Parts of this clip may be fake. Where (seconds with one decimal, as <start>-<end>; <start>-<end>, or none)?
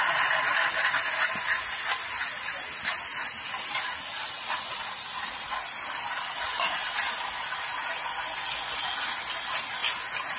none